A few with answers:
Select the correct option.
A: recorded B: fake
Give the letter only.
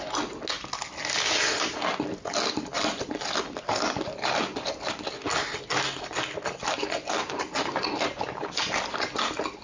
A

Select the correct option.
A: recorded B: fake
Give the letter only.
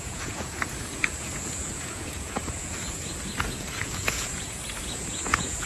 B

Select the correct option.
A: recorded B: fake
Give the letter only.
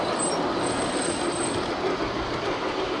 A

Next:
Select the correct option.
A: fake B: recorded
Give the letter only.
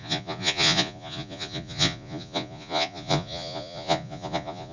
A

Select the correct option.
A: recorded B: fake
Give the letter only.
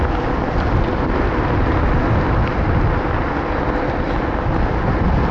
A